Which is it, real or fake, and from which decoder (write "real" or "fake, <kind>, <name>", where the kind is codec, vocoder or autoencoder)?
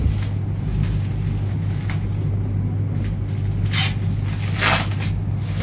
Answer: real